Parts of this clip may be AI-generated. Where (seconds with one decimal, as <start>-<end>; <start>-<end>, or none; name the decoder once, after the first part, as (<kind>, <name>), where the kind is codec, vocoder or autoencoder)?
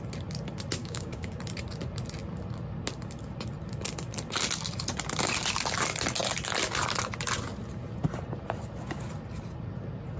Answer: 0.8-1.3 (codec, DAC)